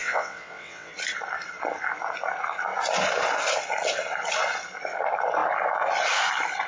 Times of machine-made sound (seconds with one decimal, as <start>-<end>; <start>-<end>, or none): 0.0-0.9